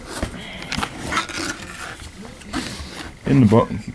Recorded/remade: recorded